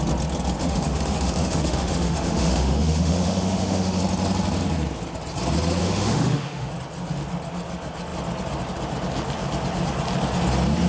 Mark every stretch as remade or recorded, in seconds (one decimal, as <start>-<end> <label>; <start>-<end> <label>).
0.0-0.6 recorded; 0.6-4.0 remade; 4.0-5.8 recorded; 5.8-6.7 remade; 6.7-10.9 recorded